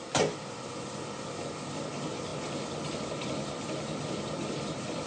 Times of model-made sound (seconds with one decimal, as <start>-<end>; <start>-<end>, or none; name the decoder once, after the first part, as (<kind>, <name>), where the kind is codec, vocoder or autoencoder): none